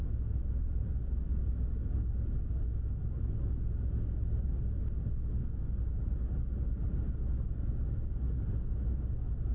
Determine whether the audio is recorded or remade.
recorded